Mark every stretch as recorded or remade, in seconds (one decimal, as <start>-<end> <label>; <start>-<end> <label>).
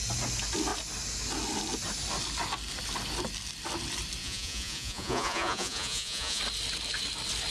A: 0.0-4.2 recorded; 4.2-6.4 remade; 6.4-7.5 recorded